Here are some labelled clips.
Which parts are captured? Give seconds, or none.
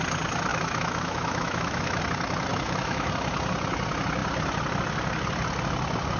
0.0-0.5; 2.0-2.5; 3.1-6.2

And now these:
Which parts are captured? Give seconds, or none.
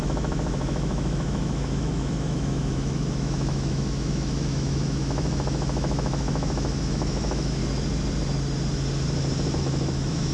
7.6-9.6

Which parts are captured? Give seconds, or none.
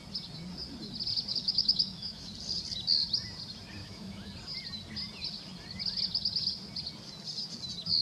0.0-1.3; 2.3-3.8; 4.3-8.0